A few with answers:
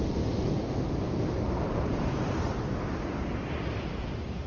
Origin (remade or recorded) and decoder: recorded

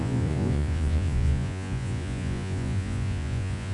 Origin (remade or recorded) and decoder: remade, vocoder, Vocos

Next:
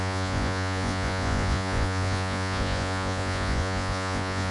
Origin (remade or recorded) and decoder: remade, vocoder, Vocos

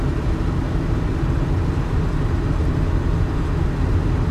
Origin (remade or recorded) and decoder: recorded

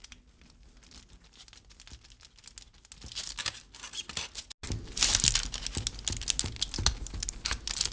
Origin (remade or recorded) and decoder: recorded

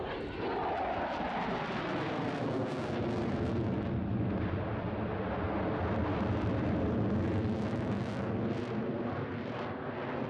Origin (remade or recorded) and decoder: recorded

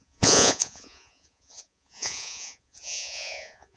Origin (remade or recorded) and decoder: remade, vocoder, Vocos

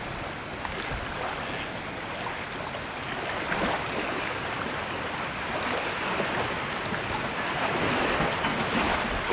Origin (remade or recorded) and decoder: recorded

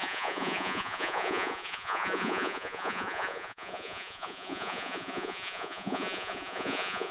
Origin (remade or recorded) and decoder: remade, vocoder, Vocos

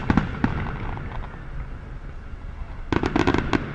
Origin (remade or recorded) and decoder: recorded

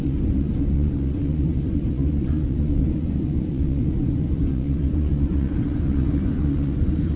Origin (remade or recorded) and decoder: remade, vocoder, Vocos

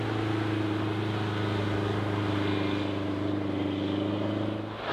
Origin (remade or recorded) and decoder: recorded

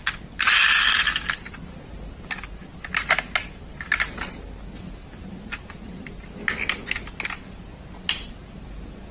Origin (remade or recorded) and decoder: recorded